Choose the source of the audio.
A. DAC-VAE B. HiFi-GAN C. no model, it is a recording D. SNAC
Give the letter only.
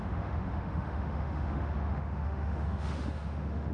A